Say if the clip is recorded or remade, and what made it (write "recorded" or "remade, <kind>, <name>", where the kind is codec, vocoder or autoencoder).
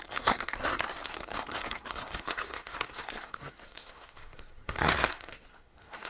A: remade, codec, SNAC